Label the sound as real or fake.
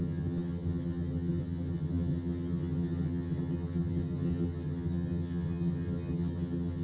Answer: fake